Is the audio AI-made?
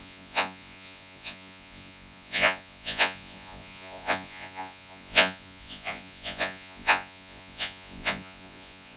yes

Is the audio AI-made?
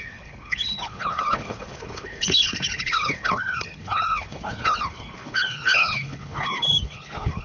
yes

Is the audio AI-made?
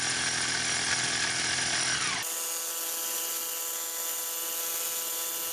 no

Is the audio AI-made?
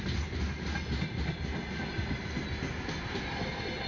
no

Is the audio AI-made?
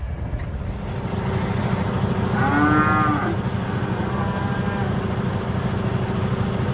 no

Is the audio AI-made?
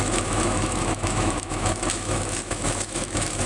yes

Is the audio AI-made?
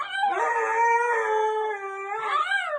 no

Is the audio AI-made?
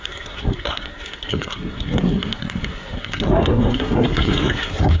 yes